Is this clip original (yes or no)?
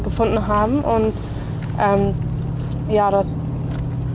yes